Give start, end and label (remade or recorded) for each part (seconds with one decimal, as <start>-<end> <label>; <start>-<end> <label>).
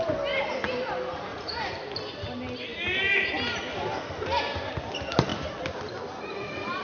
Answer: 0.0-1.3 recorded; 1.3-1.9 remade; 1.9-6.8 recorded